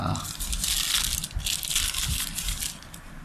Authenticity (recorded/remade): recorded